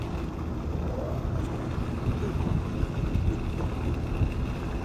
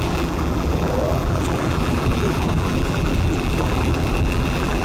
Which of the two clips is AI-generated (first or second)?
second